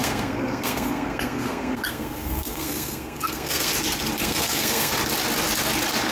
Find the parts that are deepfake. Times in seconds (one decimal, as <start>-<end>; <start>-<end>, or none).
0.0-3.7; 4.2-4.9